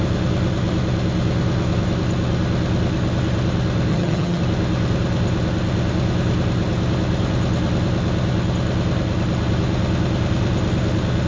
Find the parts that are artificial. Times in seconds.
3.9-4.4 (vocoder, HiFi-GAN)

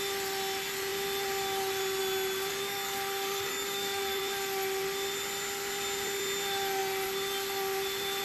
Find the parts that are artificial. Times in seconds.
2.5-4.2 (codec, DAC)

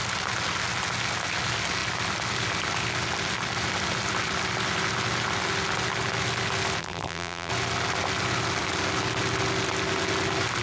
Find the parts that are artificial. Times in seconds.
6.8-7.5 (vocoder, BigVGAN v2)

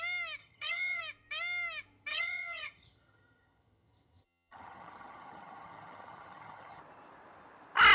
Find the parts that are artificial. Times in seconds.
0.4-1.0 (vocoder, HiFi-GAN); 2.1-6.8

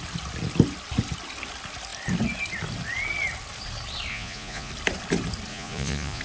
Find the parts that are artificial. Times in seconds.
4.1-4.7 (vocoder, Vocos); 5.5-6.2

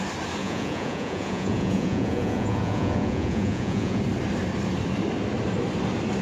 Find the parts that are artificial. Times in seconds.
0.4-4.0 (vocoder, Vocos)

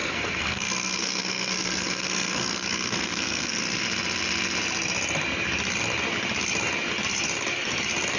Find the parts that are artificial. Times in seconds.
0.0-3.6 (codec, SNAC)

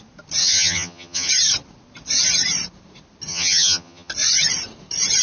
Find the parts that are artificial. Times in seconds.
0.4-1.3 (vocoder, HiFi-GAN); 3.3-4.1